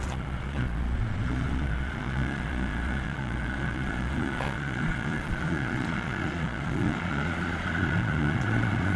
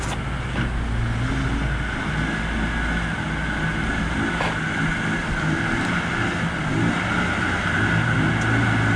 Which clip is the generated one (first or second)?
first